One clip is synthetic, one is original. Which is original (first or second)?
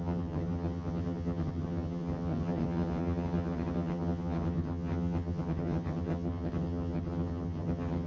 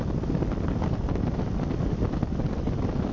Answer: second